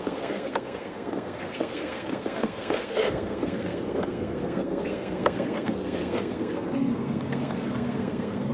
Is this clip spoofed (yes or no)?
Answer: yes